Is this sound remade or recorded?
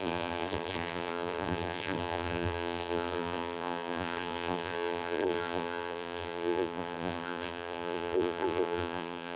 remade